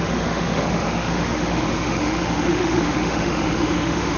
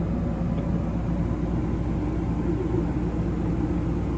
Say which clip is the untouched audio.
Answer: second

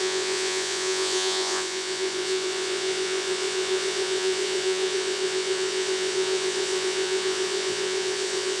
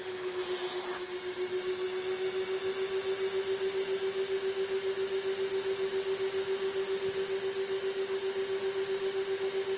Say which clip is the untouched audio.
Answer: second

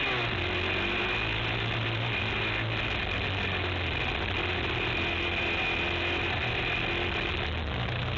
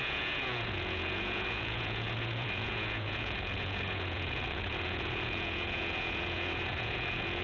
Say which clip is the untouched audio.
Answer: first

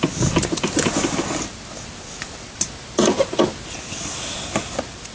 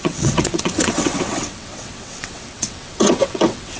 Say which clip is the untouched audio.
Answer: first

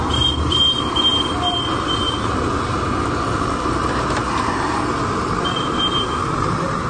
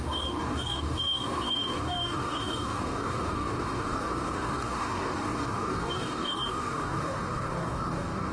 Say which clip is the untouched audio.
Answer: first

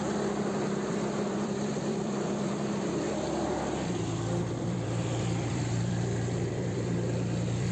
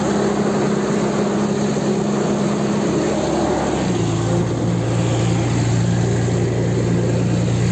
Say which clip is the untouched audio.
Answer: second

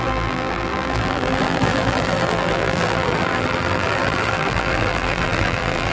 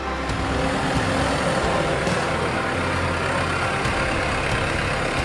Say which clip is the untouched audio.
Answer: second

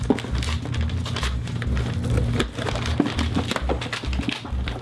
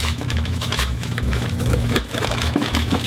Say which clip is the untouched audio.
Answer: first